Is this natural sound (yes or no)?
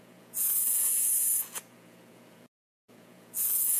no